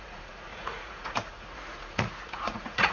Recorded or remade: remade